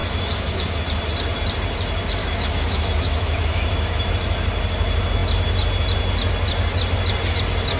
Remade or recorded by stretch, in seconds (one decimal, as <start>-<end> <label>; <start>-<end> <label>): 0.0-0.6 remade; 0.6-2.2 recorded; 2.2-4.1 remade; 4.1-7.8 recorded